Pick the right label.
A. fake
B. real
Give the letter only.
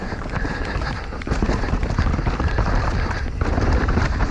A